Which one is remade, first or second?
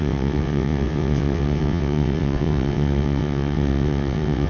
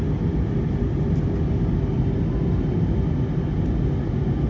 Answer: first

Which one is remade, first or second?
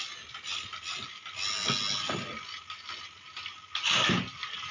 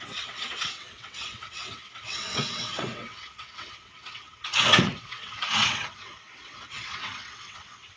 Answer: second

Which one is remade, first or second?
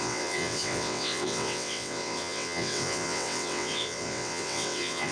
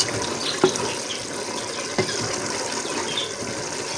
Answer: first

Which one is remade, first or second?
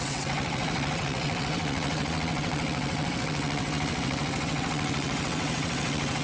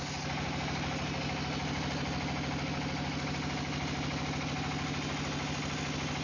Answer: first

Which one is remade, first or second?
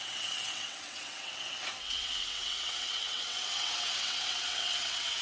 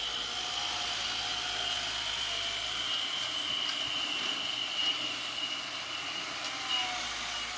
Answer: first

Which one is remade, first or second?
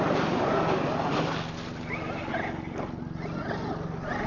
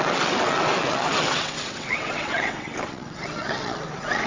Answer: second